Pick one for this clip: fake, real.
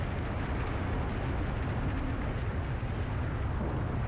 real